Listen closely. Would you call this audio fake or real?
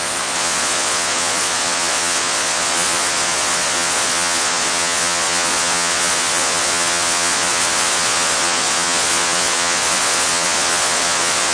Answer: fake